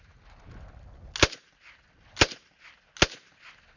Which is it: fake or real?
real